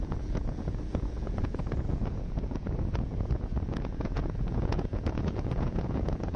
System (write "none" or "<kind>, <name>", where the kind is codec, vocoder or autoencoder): vocoder, Vocos